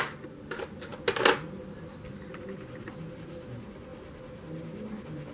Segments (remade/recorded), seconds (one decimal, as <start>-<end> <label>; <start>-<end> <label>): 0.0-5.3 recorded